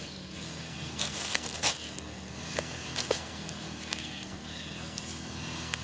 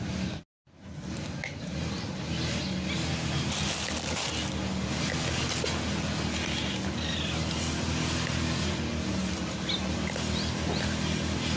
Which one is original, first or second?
second